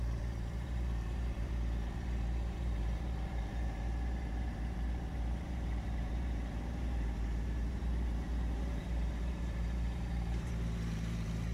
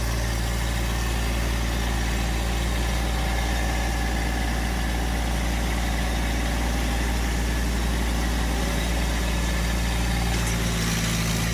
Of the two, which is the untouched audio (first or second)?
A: second